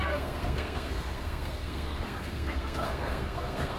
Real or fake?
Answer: fake